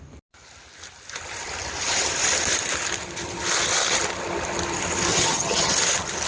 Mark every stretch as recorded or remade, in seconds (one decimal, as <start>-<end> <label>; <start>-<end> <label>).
0.0-5.1 recorded; 5.1-5.7 remade; 5.7-6.3 recorded